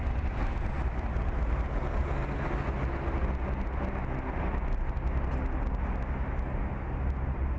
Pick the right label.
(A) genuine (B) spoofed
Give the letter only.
A